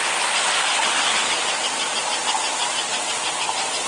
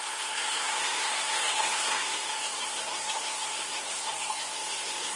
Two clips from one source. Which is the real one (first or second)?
first